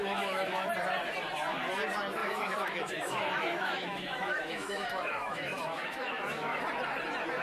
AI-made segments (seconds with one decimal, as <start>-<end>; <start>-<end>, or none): 0.0-0.7; 2.2-6.6